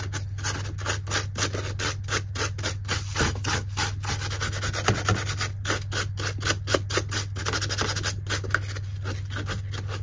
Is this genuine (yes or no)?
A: yes